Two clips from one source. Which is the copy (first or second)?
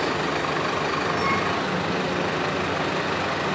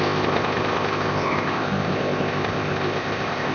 second